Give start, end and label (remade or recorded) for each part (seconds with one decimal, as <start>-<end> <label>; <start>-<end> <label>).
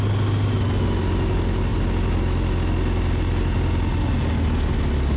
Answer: 0.0-5.2 recorded